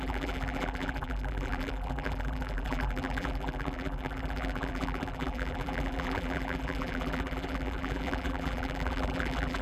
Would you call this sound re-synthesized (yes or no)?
yes